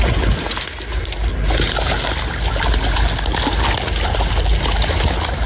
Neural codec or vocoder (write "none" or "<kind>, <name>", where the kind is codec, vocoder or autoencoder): none